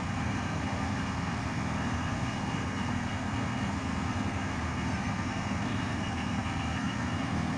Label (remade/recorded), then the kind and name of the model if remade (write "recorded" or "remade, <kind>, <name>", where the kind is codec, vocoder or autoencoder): remade, codec, SNAC